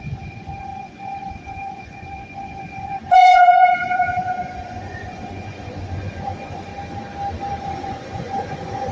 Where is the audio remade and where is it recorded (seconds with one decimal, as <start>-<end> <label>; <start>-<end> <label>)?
0.0-6.7 remade; 6.7-7.6 recorded; 7.6-8.9 remade